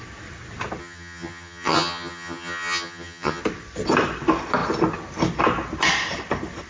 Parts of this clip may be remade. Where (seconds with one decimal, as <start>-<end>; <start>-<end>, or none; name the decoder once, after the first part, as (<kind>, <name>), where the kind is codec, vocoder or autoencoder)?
0.8-3.4 (vocoder, HiFi-GAN)